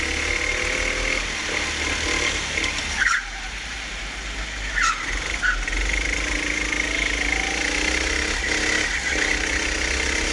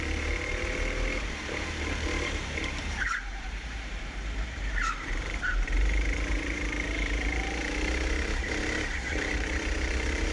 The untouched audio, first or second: first